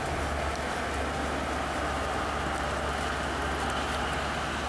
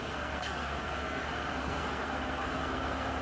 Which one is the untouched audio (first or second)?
first